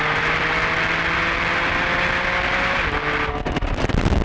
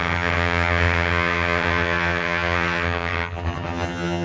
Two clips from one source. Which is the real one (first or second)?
first